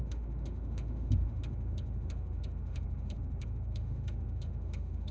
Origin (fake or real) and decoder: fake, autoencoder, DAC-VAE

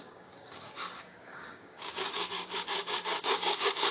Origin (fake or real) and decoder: fake, codec, DAC